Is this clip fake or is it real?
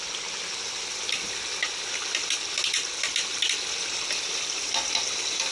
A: real